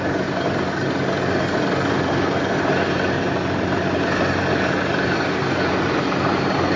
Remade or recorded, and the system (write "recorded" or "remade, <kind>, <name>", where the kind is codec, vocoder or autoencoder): recorded